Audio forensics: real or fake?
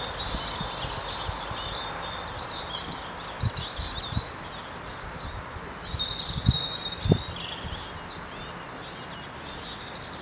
real